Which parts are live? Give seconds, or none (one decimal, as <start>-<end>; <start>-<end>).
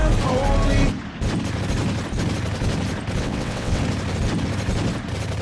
0.0-3.2; 3.8-5.4